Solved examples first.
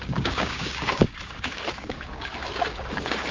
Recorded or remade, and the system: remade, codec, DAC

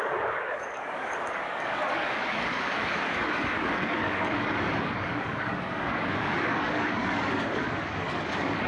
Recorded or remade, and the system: remade, codec, DAC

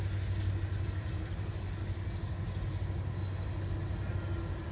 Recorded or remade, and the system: recorded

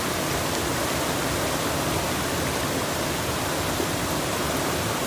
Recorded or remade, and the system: recorded